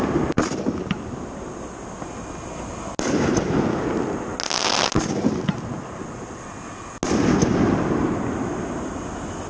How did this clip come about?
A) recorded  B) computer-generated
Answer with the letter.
A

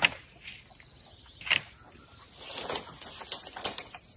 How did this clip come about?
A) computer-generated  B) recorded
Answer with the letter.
B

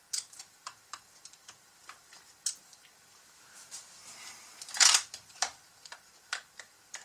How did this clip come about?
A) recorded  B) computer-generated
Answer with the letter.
B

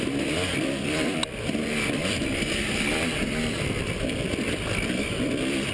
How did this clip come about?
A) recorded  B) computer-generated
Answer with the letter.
B